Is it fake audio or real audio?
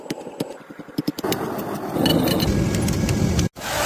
real